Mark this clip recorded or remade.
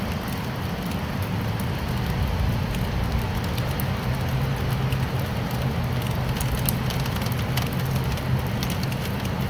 recorded